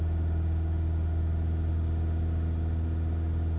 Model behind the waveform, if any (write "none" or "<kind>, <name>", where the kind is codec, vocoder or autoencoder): none